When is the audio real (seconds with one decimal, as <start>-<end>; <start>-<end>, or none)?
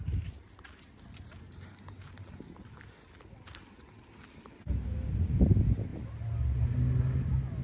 0.0-7.6